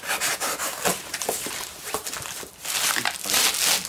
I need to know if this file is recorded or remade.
recorded